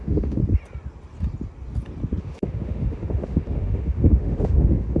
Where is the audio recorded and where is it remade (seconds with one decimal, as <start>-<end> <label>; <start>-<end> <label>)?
0.0-0.4 remade; 0.4-2.2 recorded; 2.2-5.0 remade